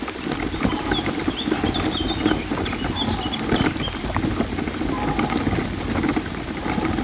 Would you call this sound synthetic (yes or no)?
no